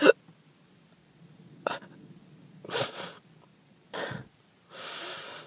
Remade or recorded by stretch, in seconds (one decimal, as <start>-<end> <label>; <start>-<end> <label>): 0.0-1.0 recorded; 1.0-3.1 remade; 3.1-3.5 recorded; 3.5-4.3 remade; 4.3-5.5 recorded